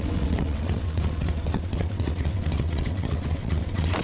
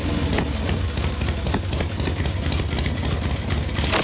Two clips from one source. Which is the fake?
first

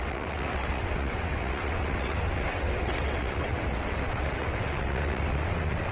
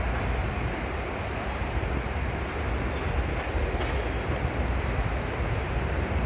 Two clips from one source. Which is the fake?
first